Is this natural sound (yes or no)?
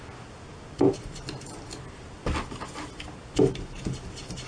yes